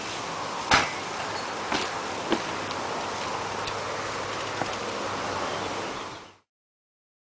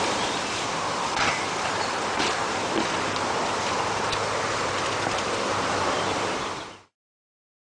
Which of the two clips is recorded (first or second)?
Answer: first